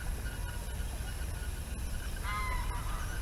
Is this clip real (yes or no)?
yes